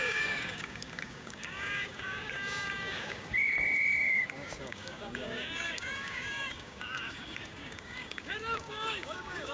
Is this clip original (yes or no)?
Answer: no